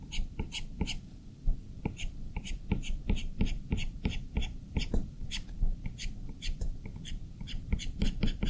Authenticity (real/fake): fake